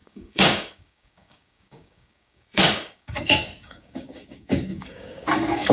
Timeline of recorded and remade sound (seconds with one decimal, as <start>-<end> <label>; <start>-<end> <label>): 0.0-5.7 remade